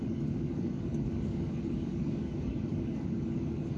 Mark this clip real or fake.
fake